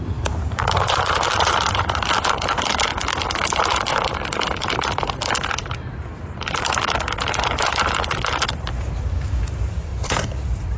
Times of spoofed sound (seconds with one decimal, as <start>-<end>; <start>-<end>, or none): 0.0-2.9; 3.7-10.8